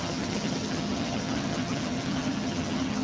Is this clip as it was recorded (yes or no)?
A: no